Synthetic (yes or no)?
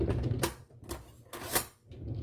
no